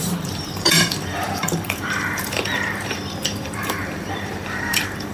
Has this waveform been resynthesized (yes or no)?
yes